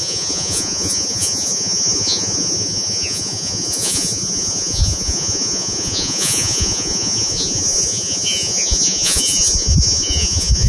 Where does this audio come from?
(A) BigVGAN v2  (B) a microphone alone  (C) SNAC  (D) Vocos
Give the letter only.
D